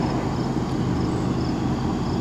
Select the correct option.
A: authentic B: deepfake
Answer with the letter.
A